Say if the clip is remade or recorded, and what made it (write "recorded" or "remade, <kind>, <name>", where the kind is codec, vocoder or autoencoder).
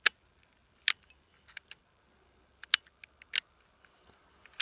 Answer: recorded